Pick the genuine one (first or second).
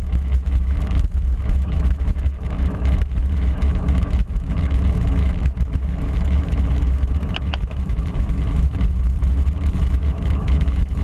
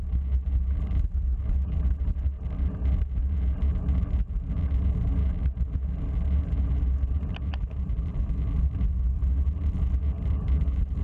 second